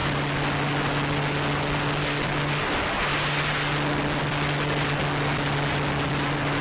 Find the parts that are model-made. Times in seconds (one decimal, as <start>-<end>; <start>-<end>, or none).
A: none